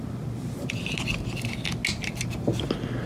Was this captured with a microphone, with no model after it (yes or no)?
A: yes